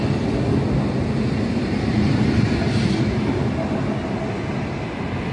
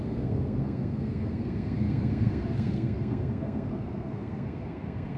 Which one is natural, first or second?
first